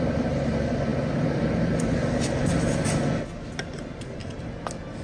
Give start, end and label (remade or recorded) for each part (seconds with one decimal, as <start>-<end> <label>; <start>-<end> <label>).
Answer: 0.0-5.0 recorded